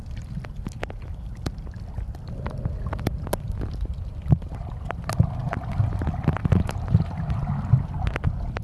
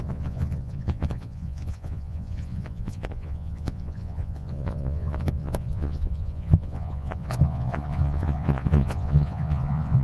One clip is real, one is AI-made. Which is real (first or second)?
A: first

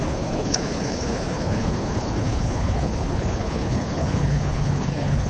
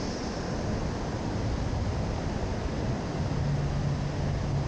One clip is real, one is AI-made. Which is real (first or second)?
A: second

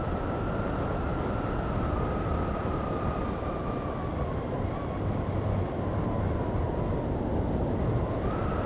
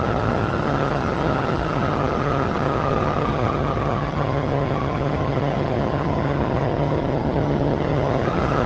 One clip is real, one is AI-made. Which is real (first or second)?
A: first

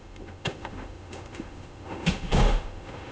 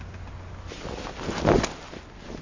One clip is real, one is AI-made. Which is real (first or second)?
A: second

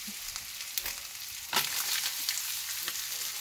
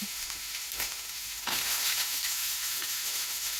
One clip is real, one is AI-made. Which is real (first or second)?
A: first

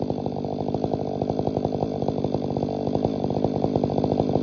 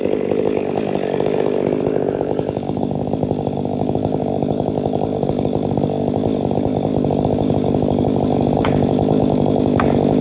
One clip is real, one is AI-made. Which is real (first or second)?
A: first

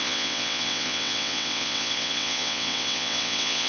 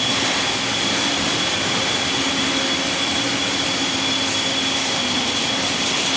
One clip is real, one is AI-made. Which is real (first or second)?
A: second